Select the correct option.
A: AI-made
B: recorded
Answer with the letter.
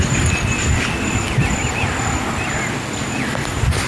B